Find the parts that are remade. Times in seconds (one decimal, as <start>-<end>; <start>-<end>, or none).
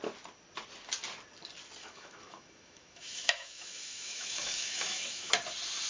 1.8-5.3